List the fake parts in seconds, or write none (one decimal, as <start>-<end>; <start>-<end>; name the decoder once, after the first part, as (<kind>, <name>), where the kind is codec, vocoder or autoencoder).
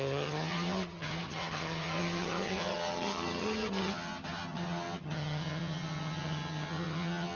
0.0-7.4 (vocoder, HiFi-GAN)